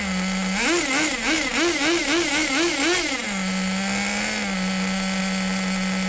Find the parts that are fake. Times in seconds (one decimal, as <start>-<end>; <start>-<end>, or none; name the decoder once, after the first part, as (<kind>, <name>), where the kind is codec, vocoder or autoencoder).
none